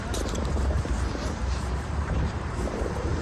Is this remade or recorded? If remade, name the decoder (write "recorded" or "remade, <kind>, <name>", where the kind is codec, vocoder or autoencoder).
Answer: remade, vocoder, BigVGAN v2